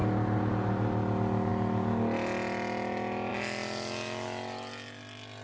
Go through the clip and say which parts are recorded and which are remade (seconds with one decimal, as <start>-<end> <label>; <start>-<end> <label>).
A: 0.0-5.4 recorded